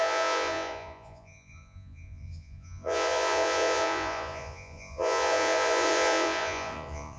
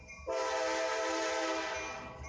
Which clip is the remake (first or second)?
first